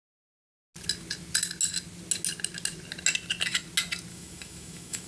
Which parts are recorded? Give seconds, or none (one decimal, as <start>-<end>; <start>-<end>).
0.0-4.1